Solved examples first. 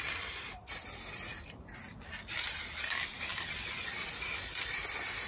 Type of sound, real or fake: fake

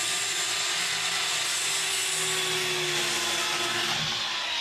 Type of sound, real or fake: real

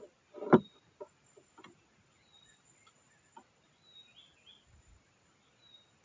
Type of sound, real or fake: real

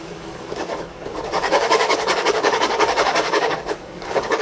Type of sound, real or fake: fake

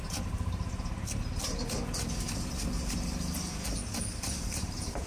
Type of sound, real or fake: real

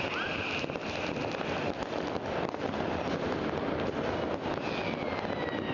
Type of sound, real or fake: real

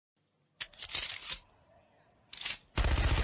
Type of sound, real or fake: real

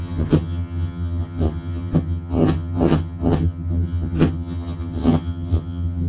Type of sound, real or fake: fake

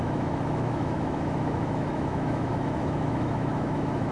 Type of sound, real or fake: fake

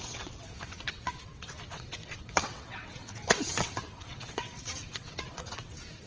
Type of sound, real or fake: fake